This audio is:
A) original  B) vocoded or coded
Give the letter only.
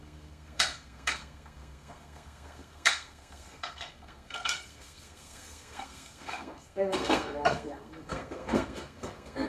B